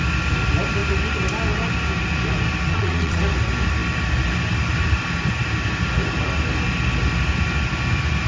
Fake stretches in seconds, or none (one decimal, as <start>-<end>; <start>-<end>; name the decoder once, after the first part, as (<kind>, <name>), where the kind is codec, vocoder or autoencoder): 2.7-3.2 (vocoder, Vocos)